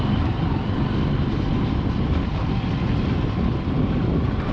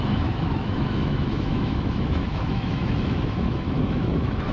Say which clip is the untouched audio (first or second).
first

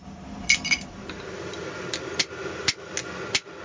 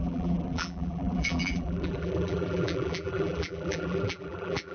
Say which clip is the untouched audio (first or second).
first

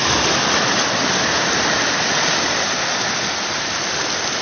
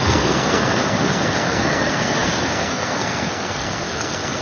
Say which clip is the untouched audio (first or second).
first